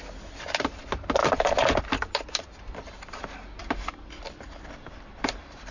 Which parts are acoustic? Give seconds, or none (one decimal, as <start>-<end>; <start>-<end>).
0.0-1.2; 1.8-3.6